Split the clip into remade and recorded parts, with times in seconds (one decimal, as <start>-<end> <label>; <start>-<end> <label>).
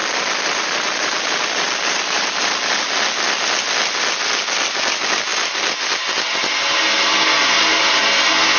0.0-8.6 recorded